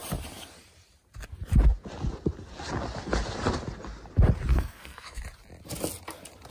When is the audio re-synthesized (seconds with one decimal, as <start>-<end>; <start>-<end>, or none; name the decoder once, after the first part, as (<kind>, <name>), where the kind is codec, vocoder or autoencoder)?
4.5-5.2 (codec, SNAC)